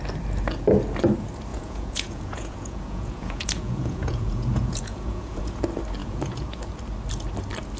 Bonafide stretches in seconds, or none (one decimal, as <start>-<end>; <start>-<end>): 0.0-1.5; 5.6-6.0; 6.6-7.8